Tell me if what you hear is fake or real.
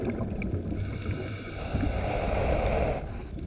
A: real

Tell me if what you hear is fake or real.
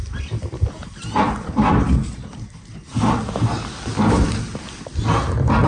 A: real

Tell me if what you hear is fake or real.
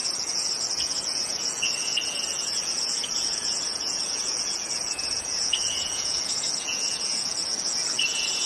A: fake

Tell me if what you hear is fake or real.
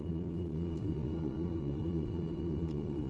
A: fake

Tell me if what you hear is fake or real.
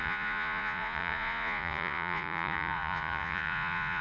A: fake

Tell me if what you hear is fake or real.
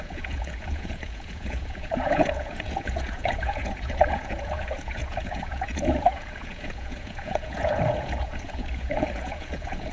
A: fake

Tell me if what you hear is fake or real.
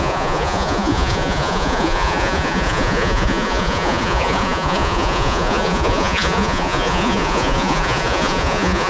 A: fake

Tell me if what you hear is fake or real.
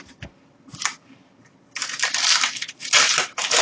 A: real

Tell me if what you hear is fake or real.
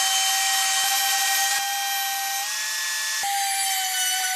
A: real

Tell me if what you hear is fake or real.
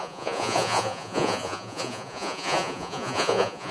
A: fake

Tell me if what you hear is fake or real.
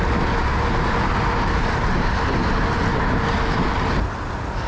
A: real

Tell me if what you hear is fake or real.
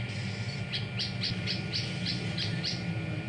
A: real